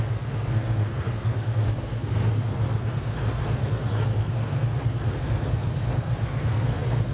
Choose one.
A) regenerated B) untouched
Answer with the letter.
A